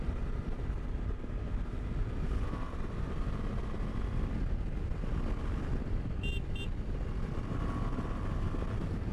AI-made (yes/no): no